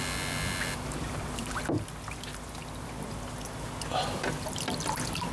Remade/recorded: recorded